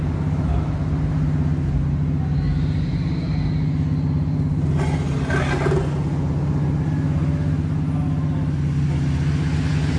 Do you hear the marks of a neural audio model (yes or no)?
no